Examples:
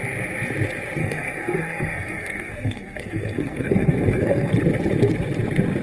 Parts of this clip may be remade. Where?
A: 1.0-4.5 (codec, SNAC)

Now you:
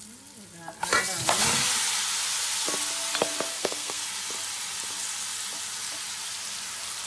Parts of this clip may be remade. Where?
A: 3.5-4.0 (codec, SNAC)

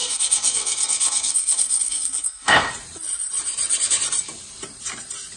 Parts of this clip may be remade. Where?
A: 0.0-2.7 (codec, SNAC)